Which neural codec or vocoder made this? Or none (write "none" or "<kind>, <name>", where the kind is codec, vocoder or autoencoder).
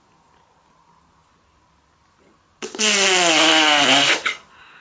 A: none